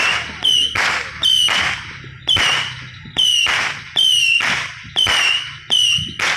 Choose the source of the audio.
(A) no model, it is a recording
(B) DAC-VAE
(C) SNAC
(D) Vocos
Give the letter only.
A